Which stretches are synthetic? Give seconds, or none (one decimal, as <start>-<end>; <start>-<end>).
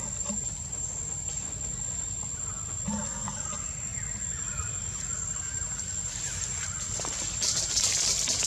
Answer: none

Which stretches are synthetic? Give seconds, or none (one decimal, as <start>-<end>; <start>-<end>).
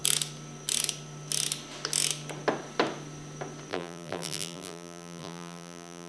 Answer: 3.7-6.1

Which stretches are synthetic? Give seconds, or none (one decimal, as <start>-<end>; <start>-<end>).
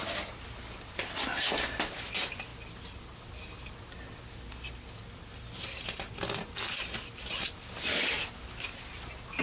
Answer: none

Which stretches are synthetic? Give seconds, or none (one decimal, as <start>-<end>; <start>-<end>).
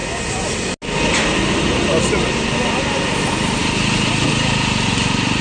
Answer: none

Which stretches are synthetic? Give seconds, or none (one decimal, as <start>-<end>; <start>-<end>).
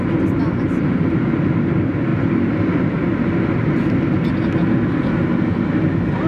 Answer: none